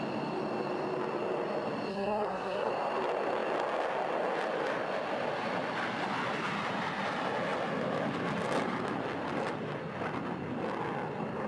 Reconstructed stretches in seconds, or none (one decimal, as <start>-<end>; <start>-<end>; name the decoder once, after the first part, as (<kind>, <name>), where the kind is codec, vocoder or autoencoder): 1.9-2.7 (codec, SNAC)